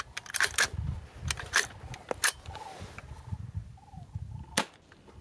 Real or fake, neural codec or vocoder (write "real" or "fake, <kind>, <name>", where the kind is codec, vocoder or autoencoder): real